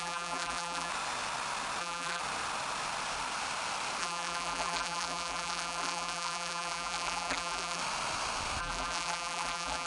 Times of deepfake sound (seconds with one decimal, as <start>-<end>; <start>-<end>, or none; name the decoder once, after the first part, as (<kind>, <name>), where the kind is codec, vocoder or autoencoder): 0.0-0.9 (vocoder, BigVGAN v2); 1.8-2.2; 4.0-7.8; 8.6-9.9